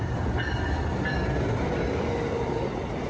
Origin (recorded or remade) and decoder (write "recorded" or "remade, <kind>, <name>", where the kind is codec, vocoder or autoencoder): recorded